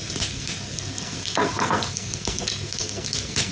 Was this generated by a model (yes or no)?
yes